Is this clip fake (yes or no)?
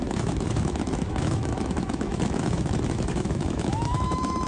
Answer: yes